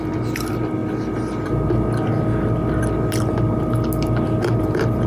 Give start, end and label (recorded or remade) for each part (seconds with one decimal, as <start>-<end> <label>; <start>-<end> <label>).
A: 0.0-5.1 recorded

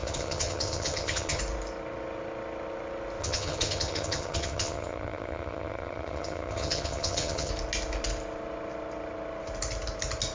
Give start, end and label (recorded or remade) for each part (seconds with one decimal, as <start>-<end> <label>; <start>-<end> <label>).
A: 0.0-1.4 remade; 1.4-3.2 recorded; 3.2-7.5 remade; 7.5-10.3 recorded

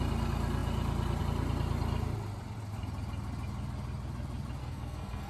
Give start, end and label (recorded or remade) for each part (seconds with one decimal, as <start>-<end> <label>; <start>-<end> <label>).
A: 0.0-4.6 recorded; 4.6-5.3 remade

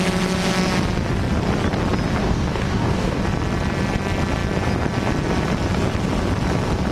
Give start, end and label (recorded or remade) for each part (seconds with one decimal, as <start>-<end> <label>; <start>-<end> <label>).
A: 0.0-2.2 recorded; 2.2-3.2 remade; 3.2-6.9 recorded